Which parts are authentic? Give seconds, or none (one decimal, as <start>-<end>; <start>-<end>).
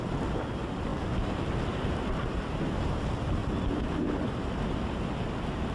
0.0-5.7